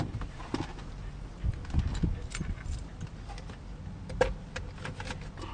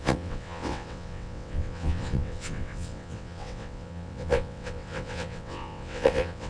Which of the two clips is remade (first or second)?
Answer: second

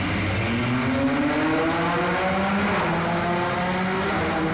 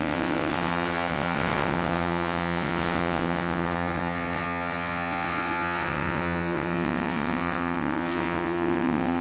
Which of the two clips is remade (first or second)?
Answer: second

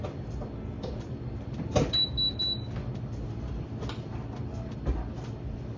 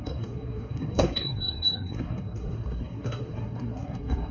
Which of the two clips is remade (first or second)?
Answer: second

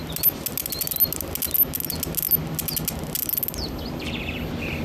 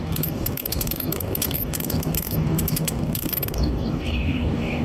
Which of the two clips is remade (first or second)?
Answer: second